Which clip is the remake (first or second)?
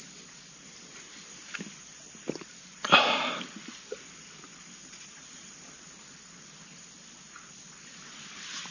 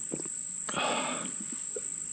first